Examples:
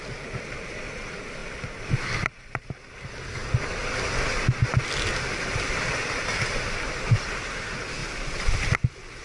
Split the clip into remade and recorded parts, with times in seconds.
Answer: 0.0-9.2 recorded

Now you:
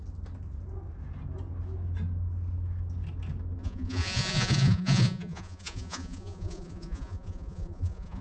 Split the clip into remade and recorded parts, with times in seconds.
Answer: 0.0-3.6 recorded; 3.6-8.2 remade

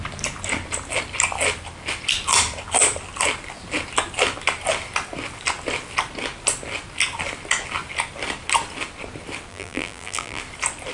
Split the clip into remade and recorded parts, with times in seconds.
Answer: 0.0-9.5 recorded; 9.5-10.4 remade; 10.4-10.9 recorded

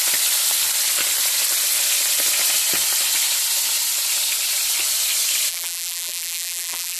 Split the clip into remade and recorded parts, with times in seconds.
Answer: 0.0-5.5 recorded; 5.5-7.0 remade